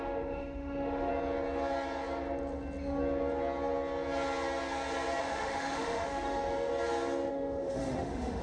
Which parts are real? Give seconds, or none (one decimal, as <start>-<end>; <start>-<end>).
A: 1.1-5.2; 6.7-7.3